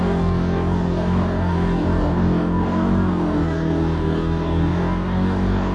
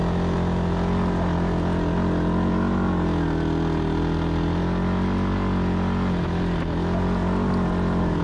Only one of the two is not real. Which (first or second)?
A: first